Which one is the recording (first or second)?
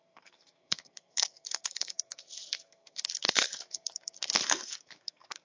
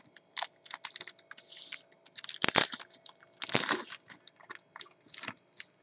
second